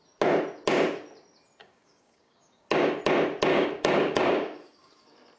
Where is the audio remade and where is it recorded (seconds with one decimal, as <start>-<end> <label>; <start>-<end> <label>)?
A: 0.0-1.6 recorded; 1.6-3.0 remade; 3.0-3.5 recorded; 3.5-4.9 remade; 4.9-5.4 recorded